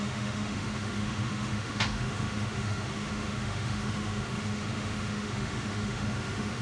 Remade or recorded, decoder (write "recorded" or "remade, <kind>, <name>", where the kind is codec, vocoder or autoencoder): remade, autoencoder, DAC-VAE